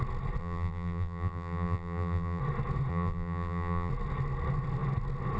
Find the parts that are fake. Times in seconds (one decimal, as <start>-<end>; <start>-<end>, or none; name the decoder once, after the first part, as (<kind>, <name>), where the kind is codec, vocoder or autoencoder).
0.4-2.4 (vocoder, BigVGAN v2); 2.9-3.9